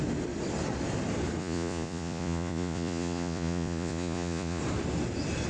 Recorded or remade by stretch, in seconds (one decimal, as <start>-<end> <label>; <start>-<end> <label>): 0.0-1.4 recorded; 1.4-4.6 remade; 4.6-5.5 recorded